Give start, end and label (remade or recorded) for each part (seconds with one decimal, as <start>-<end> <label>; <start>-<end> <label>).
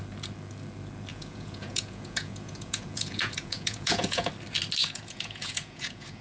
0.0-1.1 recorded; 1.1-4.3 remade; 4.3-4.8 recorded; 4.8-6.2 remade